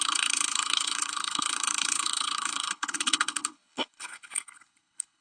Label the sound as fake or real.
fake